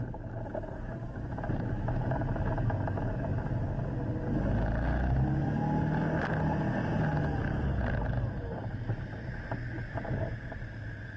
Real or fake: real